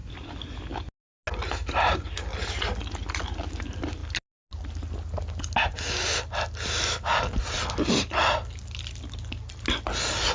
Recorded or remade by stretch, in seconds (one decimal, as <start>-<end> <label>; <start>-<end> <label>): 0.0-10.3 recorded